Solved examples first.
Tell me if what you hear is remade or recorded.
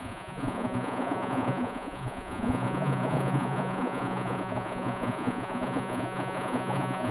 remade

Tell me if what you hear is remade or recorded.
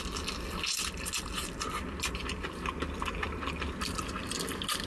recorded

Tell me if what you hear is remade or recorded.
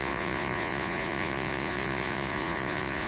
remade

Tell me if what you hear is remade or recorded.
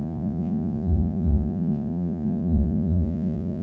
remade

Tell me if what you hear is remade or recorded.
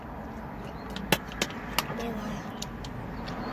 recorded